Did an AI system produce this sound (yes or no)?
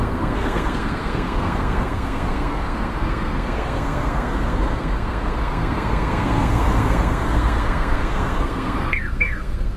yes